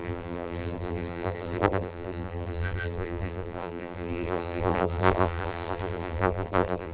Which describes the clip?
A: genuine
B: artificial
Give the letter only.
B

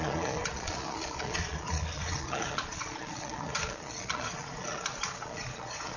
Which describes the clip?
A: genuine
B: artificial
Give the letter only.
B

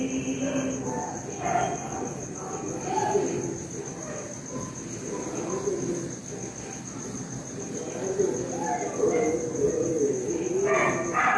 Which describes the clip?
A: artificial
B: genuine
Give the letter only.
B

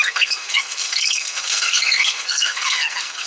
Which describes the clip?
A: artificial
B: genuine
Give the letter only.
A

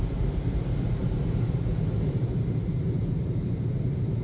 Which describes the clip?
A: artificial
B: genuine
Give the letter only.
A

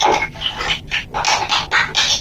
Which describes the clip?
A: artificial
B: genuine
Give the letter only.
B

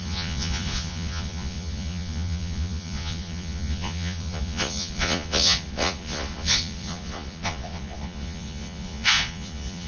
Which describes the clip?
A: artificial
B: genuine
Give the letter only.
A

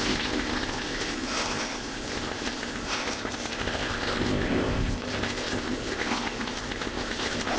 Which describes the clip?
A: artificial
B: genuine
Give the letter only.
A